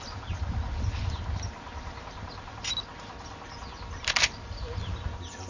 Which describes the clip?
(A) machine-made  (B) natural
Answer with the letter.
B